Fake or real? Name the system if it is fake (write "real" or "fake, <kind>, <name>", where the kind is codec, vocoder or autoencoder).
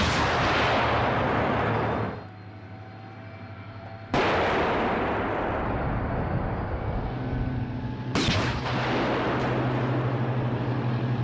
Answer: real